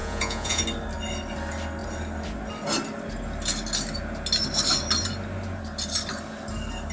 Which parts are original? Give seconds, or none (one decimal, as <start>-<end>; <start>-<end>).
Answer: 0.6-6.9